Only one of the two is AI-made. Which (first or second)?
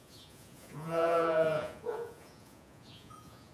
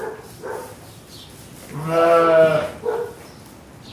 first